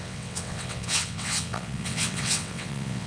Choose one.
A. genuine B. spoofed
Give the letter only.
B